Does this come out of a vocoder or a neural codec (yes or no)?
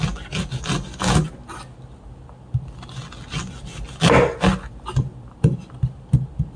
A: no